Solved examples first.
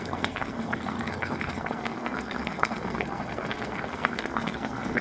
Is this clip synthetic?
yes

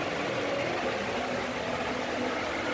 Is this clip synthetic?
no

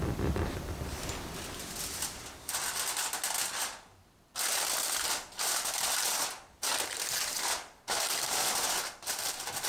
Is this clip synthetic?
no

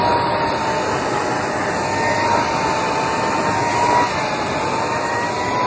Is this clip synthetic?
no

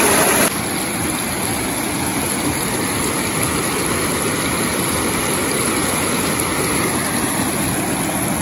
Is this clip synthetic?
no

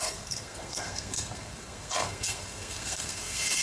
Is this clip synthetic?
yes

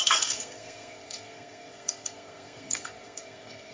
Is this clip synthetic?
yes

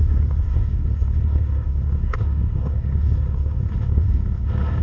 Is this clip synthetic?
yes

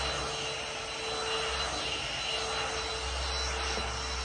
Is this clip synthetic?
no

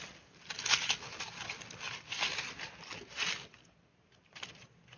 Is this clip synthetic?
no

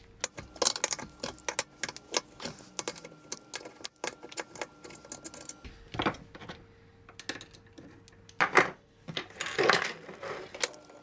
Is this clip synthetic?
no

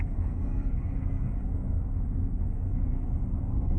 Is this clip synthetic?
yes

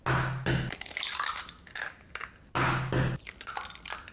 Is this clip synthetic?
no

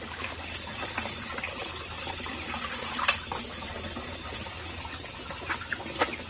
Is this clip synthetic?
no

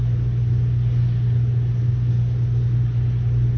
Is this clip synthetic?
no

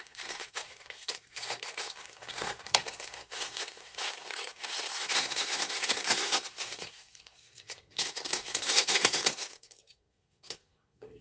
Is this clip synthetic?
yes